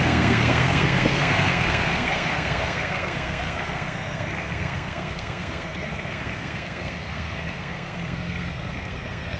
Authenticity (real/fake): fake